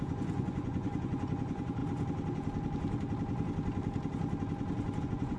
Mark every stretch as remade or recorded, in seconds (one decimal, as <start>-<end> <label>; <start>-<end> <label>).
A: 0.0-1.8 remade; 1.8-5.0 recorded; 5.0-5.4 remade